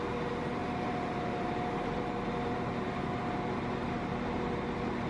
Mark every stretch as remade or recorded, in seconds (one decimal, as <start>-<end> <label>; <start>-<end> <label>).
0.0-0.6 recorded; 0.6-3.0 remade; 3.0-3.8 recorded; 3.8-4.4 remade; 4.4-5.1 recorded